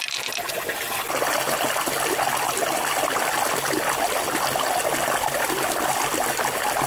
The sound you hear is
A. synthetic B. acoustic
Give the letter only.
B